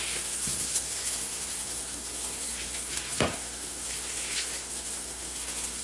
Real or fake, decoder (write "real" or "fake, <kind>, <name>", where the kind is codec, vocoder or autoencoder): fake, codec, SNAC